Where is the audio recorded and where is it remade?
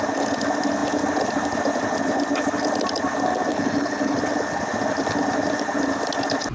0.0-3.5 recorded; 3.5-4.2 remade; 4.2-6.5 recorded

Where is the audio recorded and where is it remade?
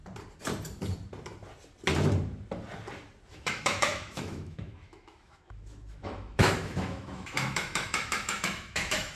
0.0-3.3 recorded; 3.3-9.2 remade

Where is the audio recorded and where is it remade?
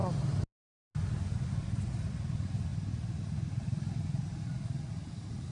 0.0-5.5 recorded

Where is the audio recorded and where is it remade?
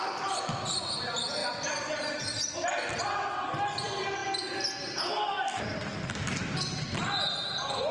0.0-1.4 recorded; 1.4-2.2 remade; 2.2-7.9 recorded